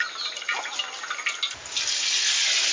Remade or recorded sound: recorded